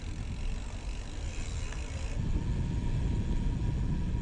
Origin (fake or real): real